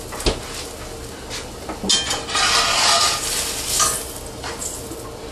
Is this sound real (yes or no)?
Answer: yes